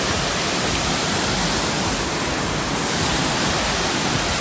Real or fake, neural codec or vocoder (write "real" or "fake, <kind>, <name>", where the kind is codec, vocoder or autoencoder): real